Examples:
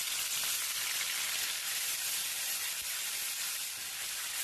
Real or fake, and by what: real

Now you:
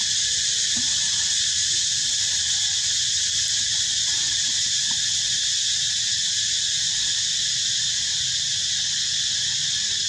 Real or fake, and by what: real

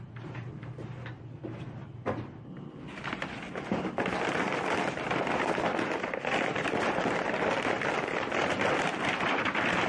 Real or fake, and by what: real